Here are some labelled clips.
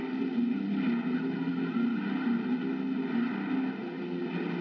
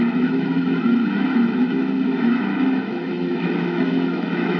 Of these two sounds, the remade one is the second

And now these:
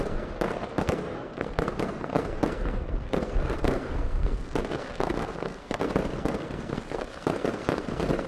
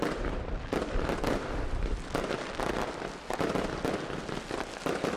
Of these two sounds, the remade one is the first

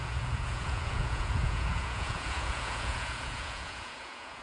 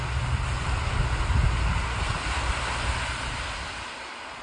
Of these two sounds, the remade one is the first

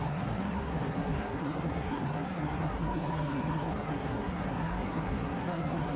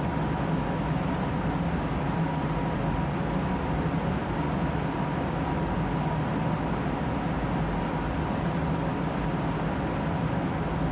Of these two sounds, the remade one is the first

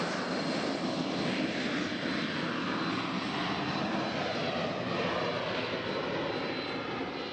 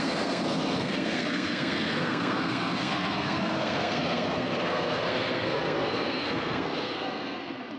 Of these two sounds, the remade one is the second